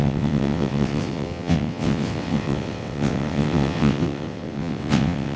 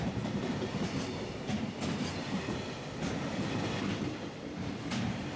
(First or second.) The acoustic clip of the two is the second